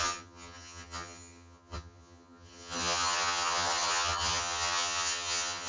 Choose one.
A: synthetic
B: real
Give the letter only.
A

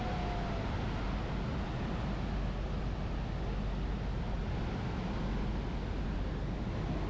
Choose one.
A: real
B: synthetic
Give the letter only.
A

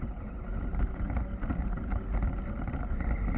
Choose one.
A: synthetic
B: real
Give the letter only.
B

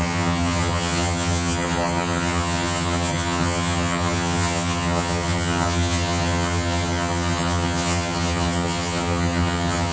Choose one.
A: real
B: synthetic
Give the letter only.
B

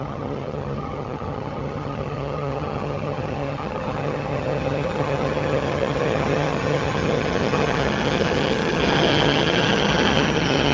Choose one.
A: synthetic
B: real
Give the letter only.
A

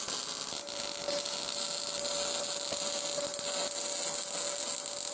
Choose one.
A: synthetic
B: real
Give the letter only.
B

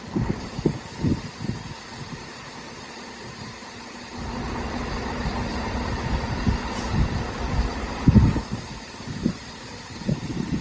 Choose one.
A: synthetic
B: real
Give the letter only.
B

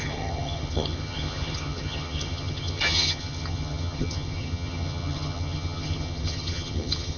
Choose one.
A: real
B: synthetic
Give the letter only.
B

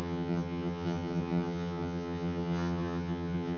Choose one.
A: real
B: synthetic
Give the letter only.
B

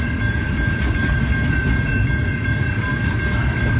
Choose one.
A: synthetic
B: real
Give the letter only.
B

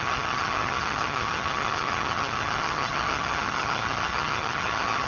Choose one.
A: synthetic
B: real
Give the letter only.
A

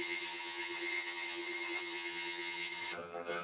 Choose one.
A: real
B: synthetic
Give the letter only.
B